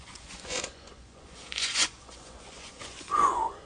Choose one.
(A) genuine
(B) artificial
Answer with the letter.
B